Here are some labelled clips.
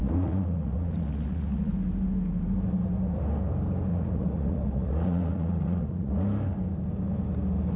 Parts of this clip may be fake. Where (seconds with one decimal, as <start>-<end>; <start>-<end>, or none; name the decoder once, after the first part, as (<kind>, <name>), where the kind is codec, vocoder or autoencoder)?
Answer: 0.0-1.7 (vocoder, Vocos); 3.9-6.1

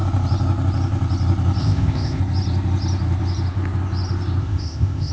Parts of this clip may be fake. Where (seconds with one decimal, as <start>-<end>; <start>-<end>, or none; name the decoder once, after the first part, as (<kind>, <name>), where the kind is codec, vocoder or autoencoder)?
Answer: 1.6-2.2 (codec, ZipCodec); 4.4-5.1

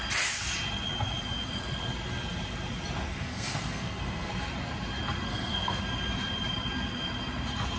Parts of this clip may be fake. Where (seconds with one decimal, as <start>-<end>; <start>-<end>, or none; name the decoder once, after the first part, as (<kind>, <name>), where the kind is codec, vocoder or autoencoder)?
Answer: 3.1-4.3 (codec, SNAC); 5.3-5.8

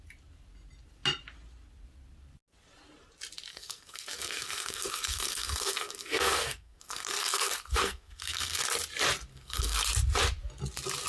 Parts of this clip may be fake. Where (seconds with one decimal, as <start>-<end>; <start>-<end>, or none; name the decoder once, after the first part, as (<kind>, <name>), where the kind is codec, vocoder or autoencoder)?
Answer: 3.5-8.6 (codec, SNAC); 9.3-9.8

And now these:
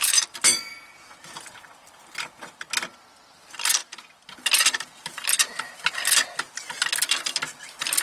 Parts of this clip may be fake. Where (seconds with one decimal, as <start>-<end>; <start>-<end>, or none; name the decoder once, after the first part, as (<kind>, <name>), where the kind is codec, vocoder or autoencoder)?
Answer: none

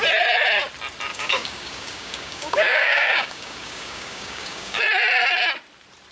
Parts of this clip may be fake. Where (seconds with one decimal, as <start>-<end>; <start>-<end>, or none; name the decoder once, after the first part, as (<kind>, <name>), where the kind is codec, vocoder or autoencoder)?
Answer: 1.1-4.8 (codec, DAC)

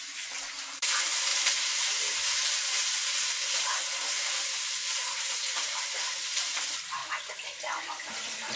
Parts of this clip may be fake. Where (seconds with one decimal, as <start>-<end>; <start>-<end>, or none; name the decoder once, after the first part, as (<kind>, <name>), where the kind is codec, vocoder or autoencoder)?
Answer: 0.0-7.0 (vocoder, BigVGAN v2); 7.9-8.6

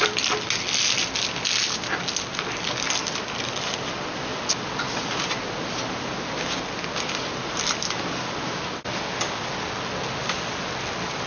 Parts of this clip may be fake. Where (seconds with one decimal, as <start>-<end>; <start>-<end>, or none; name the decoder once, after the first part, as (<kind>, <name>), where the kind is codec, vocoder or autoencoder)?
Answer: none